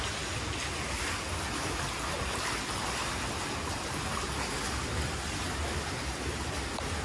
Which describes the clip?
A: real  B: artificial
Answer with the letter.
A